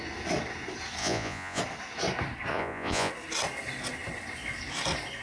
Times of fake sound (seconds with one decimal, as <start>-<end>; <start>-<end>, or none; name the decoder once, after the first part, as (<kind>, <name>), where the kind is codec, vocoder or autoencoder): 1.0-1.6 (vocoder, Vocos); 2.5-3.1